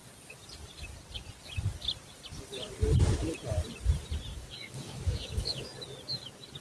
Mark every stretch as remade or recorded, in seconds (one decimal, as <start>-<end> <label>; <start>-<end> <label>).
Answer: 0.0-4.3 recorded; 4.3-5.7 remade; 5.7-6.6 recorded